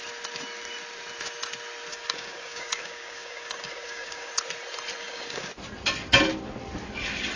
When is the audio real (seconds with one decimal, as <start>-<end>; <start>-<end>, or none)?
0.0-1.9; 4.3-5.0; 5.5-7.4